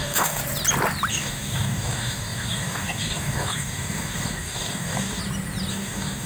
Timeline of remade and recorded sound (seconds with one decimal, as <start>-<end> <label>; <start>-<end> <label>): 0.0-0.4 remade; 0.4-1.1 recorded; 1.1-5.2 remade; 5.2-5.7 recorded; 5.7-6.3 remade